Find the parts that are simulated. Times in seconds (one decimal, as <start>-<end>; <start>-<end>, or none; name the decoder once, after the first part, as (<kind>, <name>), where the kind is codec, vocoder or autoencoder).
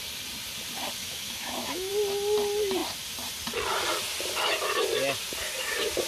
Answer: 1.0-1.9 (autoencoder, DAC-VAE)